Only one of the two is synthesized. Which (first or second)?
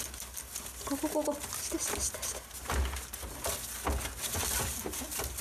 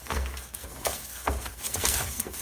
second